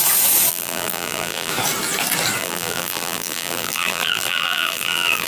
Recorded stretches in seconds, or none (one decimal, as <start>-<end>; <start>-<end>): 0.0-0.5; 1.5-2.4